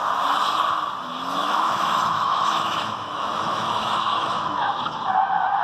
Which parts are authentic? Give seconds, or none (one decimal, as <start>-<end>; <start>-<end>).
0.0-1.4; 4.8-5.6